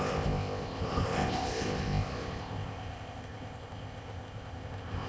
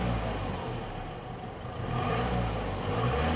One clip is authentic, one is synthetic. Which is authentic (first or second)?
second